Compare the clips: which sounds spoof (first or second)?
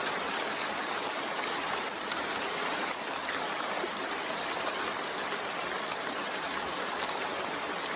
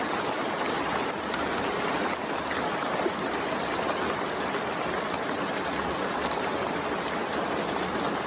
first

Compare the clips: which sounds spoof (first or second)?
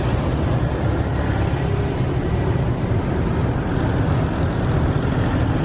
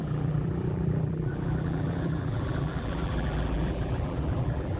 second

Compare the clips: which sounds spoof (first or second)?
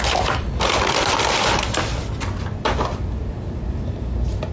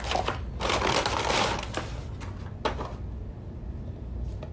first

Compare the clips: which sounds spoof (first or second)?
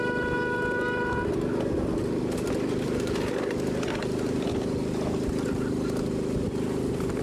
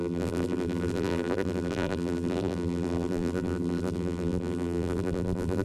second